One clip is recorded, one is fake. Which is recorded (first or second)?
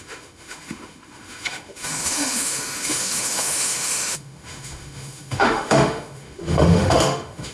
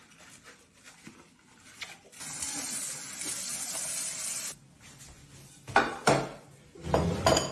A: second